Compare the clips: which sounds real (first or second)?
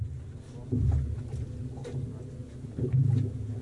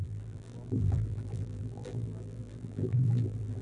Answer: first